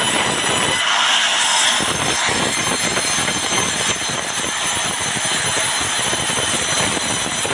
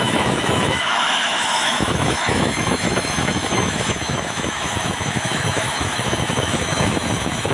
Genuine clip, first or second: first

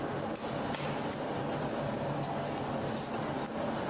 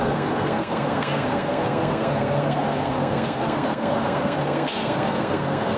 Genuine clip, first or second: first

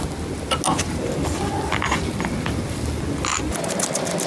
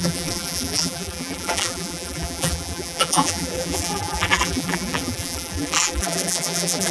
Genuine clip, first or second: first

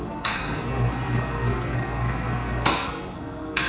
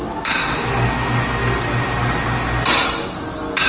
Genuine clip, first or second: second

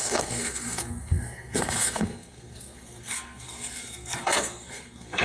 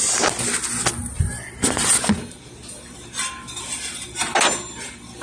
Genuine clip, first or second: second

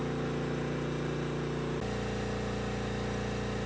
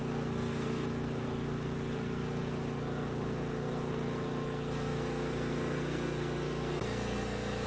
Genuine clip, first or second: first